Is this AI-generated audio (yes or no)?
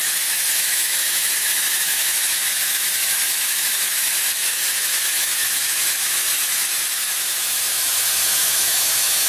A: yes